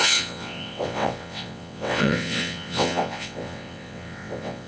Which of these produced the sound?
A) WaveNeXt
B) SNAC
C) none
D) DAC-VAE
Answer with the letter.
A